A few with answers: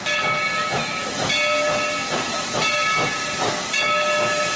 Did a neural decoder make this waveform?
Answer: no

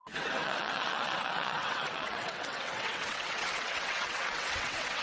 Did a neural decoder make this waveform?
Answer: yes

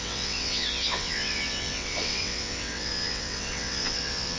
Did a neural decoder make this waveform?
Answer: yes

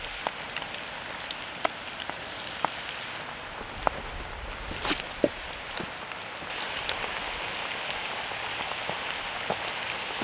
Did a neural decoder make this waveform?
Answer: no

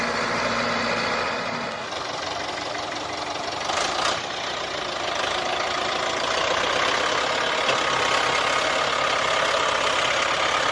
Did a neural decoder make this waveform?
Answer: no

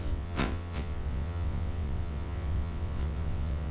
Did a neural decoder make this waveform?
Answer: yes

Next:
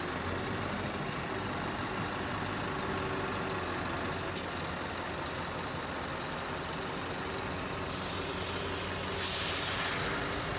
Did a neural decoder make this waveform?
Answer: no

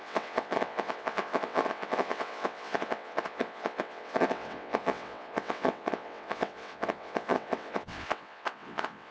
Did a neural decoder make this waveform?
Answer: yes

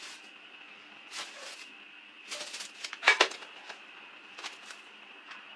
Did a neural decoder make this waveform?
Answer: no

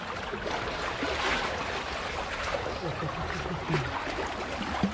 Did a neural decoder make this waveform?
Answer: no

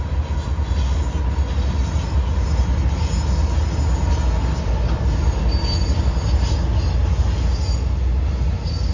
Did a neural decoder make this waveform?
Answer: no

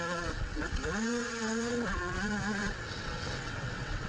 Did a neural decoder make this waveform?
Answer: yes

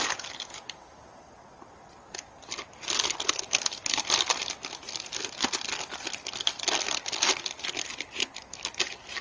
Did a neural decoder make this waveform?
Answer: no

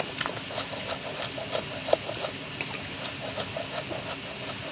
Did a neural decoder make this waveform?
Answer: no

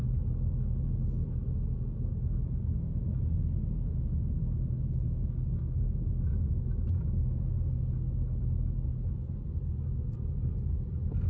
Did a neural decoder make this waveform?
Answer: no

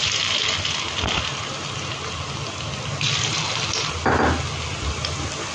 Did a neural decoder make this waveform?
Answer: no